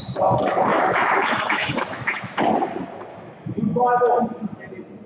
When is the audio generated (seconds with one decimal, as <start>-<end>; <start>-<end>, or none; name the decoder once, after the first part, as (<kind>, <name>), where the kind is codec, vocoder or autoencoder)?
0.7-2.4 (autoencoder, DAC-VAE); 3.1-4.2